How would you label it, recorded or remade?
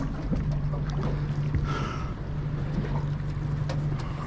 recorded